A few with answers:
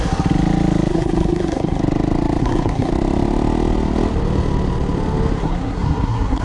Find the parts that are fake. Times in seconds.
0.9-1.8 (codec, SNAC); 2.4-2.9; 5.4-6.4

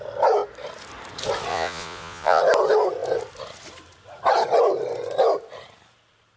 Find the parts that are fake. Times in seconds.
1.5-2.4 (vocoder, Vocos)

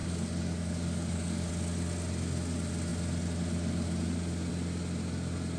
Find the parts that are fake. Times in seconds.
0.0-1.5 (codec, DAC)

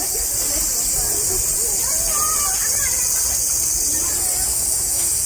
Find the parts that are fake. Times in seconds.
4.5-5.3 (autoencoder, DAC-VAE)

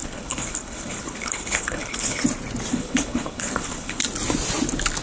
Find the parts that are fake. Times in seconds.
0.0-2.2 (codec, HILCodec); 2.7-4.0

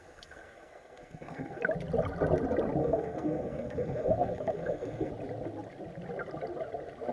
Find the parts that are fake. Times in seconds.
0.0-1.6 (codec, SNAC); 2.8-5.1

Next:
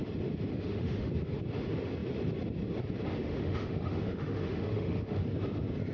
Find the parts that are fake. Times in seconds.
0.5-1.1 (autoencoder, DAC-VAE); 3.2-5.2

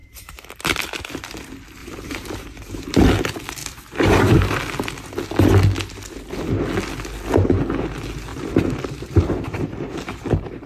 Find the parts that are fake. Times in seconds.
0.0-0.8 (vocoder, BigVGAN v2); 1.8-3.0; 3.6-4.6; 8.3-10.2